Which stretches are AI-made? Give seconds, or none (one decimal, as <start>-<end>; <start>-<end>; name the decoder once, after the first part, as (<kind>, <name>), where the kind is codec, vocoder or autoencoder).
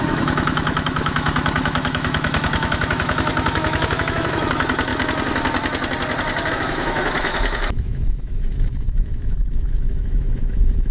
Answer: 0.0-4.9 (autoencoder, DAC-VAE); 6.5-10.9